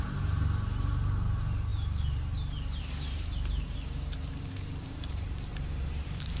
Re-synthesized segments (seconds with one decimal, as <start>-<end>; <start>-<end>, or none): 0.0-6.4